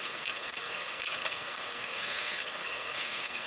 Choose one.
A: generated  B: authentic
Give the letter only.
A